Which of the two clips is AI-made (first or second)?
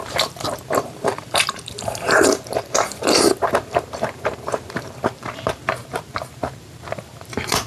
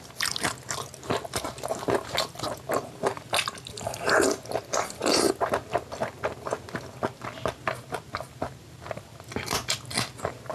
first